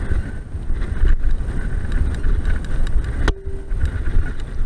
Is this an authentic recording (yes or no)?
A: yes